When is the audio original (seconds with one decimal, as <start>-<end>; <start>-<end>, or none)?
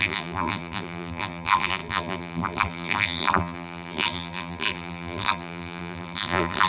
none